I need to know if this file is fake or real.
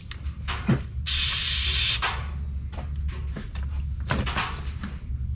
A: real